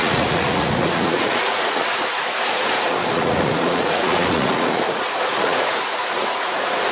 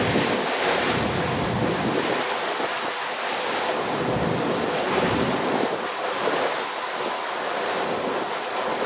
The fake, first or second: first